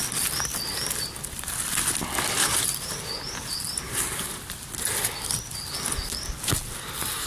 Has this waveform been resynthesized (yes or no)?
no